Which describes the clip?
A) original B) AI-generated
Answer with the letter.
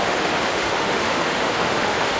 B